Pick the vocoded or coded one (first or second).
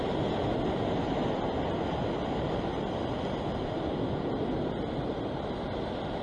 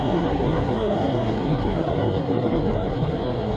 second